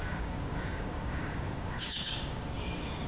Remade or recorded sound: remade